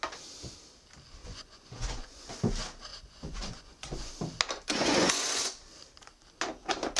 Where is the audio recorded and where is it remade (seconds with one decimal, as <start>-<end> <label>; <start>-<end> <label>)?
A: 0.0-1.2 recorded; 1.2-2.4 remade; 2.4-2.9 recorded; 2.9-4.1 remade; 4.1-4.7 recorded; 4.7-5.5 remade; 5.5-7.0 recorded

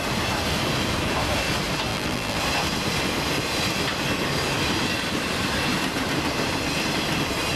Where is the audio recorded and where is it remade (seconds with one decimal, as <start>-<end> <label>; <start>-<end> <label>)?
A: 0.0-1.9 recorded; 1.9-2.4 remade; 2.4-7.6 recorded

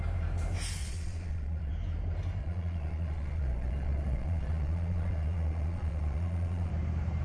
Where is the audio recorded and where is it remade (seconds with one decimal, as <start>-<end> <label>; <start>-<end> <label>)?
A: 0.0-0.8 recorded; 0.8-1.7 remade; 1.7-2.4 recorded; 2.4-6.7 remade; 6.7-7.2 recorded

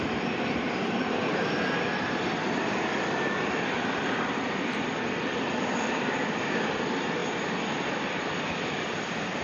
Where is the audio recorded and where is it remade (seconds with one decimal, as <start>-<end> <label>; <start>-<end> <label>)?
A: 0.0-7.2 remade; 7.2-7.9 recorded; 7.9-9.4 remade

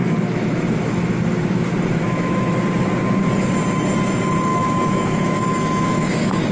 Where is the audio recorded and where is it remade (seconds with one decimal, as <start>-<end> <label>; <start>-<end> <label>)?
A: 0.0-2.5 remade; 2.5-4.5 recorded; 4.5-6.5 remade

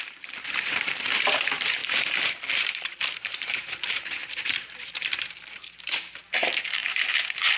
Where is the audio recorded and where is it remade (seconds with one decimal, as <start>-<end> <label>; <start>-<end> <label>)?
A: 0.0-7.6 remade

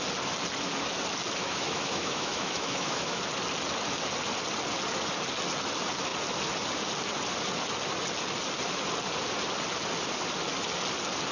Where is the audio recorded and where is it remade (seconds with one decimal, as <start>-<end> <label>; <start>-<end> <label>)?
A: 0.0-1.4 recorded; 1.4-3.2 remade; 3.2-11.3 recorded

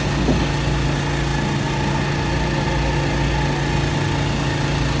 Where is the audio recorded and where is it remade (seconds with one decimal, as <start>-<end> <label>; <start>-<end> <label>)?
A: 0.0-5.0 recorded